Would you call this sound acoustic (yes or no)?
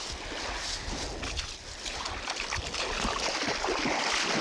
yes